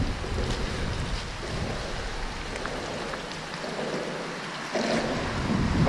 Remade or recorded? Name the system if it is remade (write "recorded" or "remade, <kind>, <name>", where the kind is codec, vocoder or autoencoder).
recorded